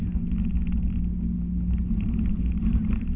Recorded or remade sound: recorded